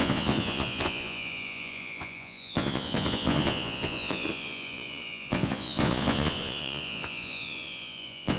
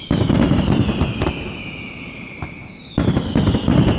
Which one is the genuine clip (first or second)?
second